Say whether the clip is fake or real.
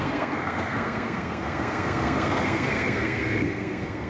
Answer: fake